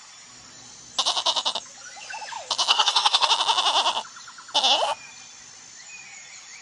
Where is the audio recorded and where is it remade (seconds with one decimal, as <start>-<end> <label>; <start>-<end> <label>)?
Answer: 0.0-2.7 recorded; 2.7-3.3 remade; 3.3-6.6 recorded